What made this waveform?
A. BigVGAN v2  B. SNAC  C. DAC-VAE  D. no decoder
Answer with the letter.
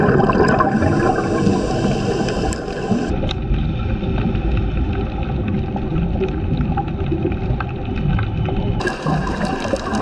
D